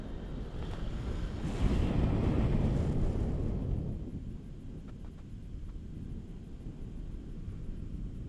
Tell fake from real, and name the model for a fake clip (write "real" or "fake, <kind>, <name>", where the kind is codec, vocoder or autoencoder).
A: real